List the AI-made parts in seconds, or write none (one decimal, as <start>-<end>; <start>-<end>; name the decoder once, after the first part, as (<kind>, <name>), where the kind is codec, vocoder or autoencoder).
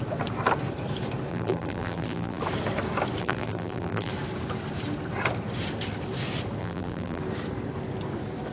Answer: 1.3-2.4 (vocoder, BigVGAN v2); 3.2-4.1; 6.6-7.2